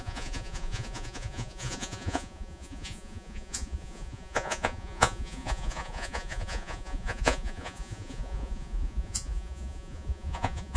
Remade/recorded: remade